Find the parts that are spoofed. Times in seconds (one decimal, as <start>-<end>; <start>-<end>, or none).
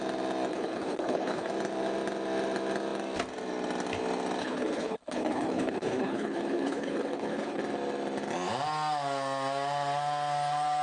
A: 0.5-1.5; 4.4-7.6